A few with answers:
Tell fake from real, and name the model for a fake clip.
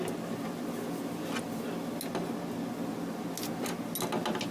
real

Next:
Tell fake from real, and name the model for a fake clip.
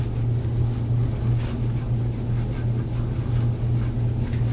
real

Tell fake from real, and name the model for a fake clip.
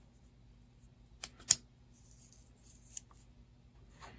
real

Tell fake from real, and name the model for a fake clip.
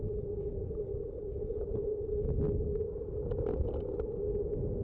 real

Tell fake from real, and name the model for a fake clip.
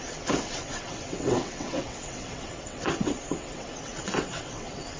fake, vocoder, WaveNeXt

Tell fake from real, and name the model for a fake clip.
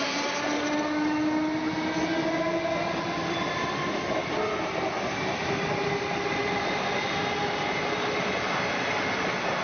real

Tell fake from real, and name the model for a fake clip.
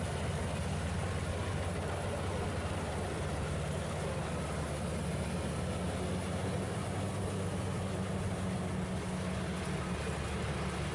real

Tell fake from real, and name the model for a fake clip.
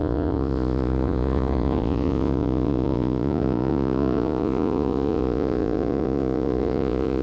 fake, vocoder, Vocos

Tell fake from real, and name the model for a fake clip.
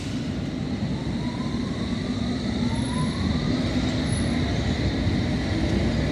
real